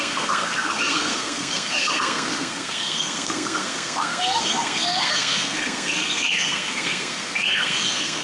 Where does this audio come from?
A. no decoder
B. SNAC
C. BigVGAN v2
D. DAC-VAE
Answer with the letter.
B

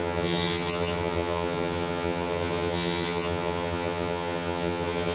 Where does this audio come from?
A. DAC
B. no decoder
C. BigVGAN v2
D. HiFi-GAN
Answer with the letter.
D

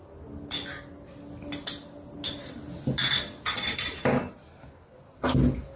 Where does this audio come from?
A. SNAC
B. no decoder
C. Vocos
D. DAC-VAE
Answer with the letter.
B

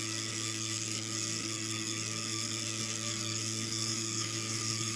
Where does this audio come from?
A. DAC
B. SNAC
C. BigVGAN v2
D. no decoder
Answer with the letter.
B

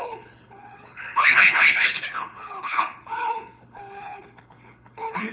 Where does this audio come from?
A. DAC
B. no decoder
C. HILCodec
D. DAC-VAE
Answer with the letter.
C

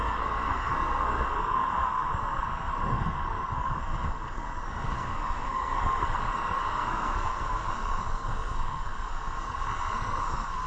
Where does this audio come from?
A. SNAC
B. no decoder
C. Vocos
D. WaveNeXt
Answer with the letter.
A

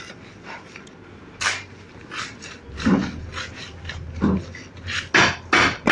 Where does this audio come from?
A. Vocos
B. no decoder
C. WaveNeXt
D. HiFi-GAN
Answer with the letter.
B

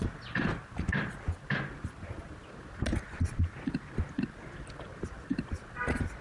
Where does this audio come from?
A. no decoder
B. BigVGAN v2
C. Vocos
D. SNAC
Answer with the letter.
A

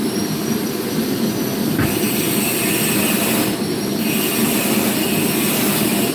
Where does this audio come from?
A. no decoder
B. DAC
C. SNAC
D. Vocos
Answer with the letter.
A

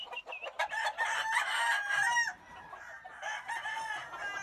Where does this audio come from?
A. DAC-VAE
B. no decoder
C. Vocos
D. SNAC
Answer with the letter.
B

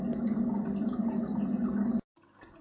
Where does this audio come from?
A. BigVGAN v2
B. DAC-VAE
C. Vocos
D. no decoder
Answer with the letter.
D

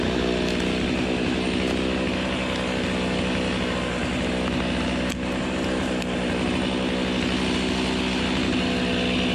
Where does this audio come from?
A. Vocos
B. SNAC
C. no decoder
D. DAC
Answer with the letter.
C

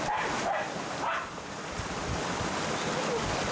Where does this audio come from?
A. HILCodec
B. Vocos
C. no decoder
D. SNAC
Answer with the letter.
C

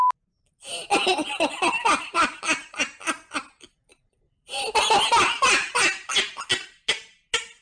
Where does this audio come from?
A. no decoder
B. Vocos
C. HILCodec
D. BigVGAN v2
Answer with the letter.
A